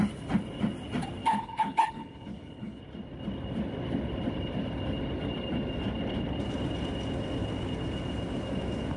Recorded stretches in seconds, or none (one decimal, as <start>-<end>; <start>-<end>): 0.0-1.2; 2.8-9.0